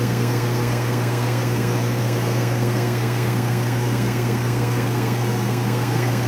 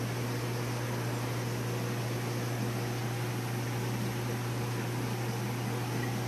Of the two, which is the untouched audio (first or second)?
second